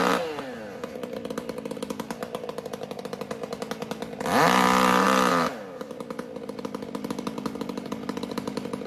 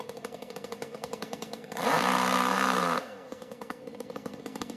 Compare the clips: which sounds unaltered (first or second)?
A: first